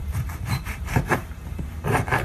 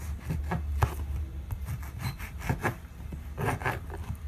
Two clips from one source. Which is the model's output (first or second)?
first